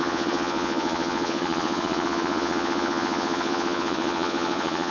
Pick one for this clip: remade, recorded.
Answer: remade